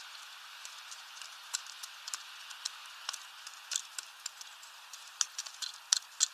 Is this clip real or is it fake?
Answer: real